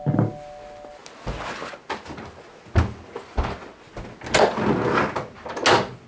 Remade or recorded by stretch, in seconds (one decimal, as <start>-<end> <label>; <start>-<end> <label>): 0.0-6.1 recorded